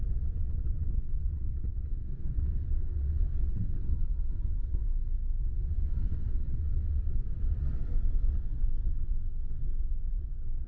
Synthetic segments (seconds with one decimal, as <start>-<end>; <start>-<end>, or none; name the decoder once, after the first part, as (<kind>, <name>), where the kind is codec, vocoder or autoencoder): 0.0-4.8 (vocoder, WaveNeXt); 5.5-10.7